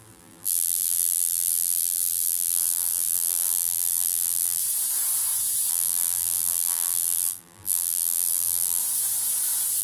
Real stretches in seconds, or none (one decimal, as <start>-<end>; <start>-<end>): 4.6-5.7; 8.8-9.8